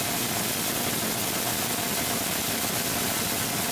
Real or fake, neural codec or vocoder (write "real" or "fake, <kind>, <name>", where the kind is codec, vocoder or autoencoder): real